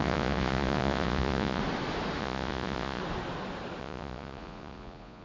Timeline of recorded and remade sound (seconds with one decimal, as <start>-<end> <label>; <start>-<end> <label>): 0.0-1.6 remade; 1.6-2.2 recorded; 2.2-3.0 remade; 3.0-3.8 recorded; 3.8-5.2 remade